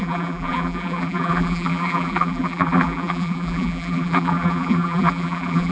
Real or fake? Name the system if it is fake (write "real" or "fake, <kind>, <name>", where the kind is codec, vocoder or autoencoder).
fake, vocoder, BigVGAN v2